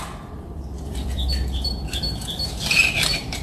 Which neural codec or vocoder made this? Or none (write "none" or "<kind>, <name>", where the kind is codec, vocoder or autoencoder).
vocoder, BigVGAN v2